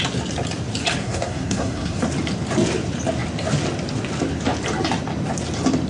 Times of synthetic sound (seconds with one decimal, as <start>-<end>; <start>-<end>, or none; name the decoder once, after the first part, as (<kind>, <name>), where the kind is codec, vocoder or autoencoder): 1.0-2.0 (codec, SNAC)